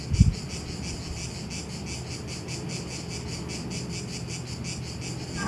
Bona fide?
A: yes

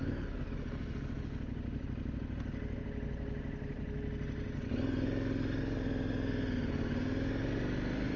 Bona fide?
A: yes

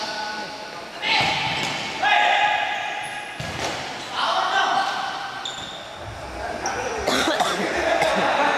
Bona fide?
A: yes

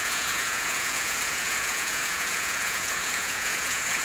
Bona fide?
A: no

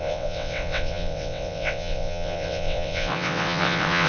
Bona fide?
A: no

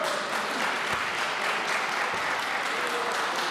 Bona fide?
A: yes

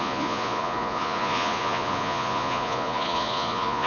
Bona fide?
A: no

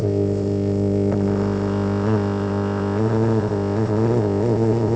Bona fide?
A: no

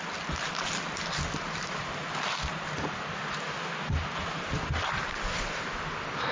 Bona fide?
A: yes